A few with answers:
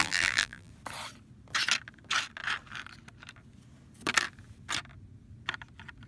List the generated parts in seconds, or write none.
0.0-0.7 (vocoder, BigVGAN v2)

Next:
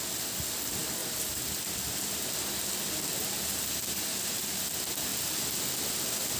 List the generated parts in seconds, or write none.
1.0-3.8 (vocoder, BigVGAN v2); 5.1-5.9

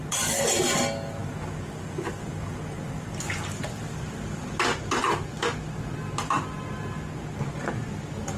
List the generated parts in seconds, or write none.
none